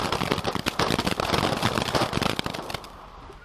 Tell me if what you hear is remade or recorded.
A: recorded